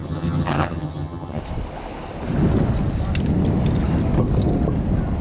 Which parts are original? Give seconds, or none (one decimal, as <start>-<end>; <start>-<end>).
1.4-5.2